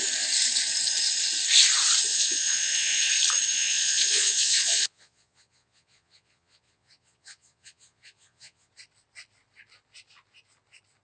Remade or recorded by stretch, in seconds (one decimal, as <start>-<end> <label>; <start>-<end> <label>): 0.0-2.1 recorded; 2.1-3.1 remade; 3.1-3.5 recorded; 3.5-8.7 remade; 8.7-11.0 recorded